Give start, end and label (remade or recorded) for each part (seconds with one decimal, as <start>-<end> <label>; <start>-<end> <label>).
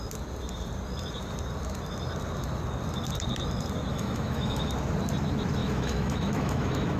0.0-3.9 recorded; 3.9-4.7 remade; 4.7-5.6 recorded; 5.6-7.0 remade